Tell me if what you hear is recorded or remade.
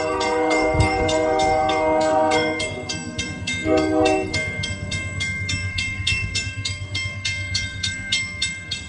remade